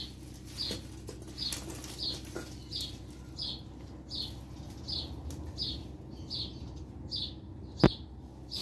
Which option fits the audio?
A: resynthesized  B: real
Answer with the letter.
B